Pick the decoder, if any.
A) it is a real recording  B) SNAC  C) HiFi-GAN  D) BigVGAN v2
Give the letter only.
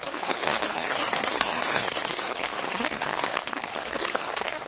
B